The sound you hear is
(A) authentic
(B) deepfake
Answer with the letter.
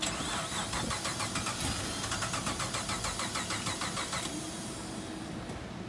A